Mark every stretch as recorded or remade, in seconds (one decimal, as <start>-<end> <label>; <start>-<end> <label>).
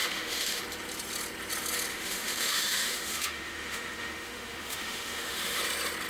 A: 0.0-0.6 remade; 0.6-1.9 recorded; 1.9-5.6 remade; 5.6-6.1 recorded